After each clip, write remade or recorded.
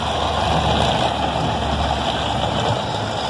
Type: recorded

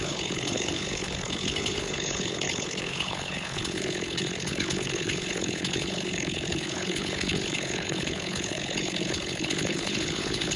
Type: remade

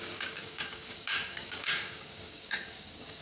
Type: remade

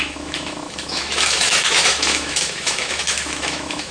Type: remade